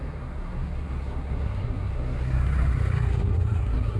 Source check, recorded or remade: remade